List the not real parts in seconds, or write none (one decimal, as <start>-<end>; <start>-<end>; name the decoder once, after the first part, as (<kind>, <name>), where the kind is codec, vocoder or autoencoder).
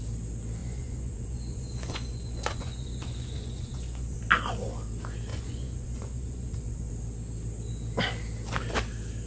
0.6-4.2 (vocoder, Vocos); 5.3-6.9